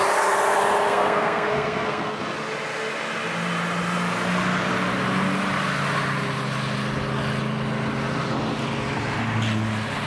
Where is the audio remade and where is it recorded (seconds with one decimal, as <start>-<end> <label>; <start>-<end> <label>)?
0.0-0.9 recorded; 0.9-2.2 remade; 2.2-10.1 recorded